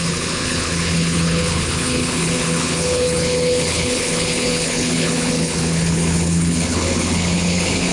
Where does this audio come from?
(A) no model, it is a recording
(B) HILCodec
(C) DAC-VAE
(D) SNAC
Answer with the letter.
B